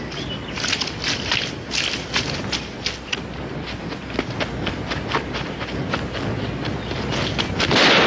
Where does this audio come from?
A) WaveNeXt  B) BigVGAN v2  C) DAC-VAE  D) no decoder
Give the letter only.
D